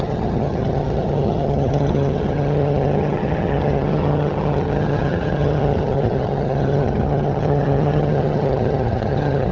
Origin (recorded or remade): remade